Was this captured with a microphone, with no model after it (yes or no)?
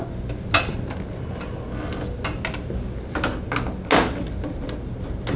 yes